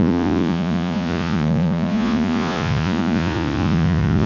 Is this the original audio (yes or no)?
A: no